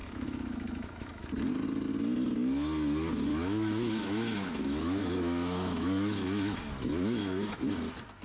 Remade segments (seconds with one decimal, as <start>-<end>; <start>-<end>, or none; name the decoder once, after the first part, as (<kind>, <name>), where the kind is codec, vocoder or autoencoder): 0.0-1.3 (autoencoder, DAC-VAE); 3.3-7.7